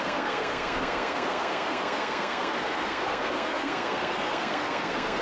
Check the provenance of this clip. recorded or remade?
remade